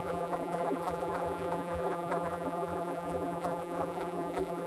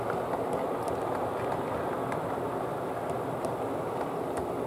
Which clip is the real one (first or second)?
second